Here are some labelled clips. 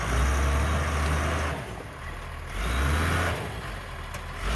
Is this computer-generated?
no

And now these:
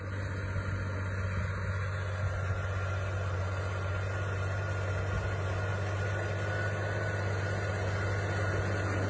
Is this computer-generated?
no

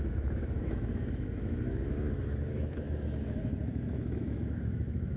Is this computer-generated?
yes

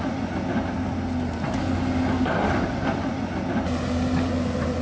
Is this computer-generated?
no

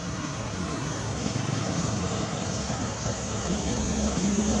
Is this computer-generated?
yes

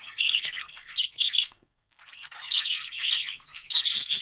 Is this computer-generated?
yes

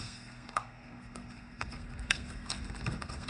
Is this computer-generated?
yes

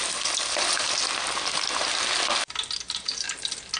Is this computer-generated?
no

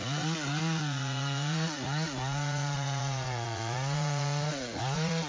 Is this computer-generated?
yes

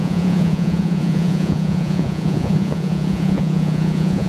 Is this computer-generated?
yes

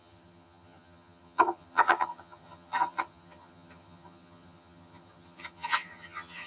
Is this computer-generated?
yes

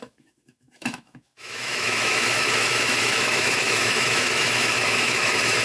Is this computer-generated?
yes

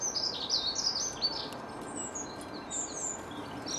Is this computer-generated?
no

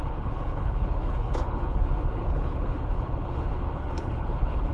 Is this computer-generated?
yes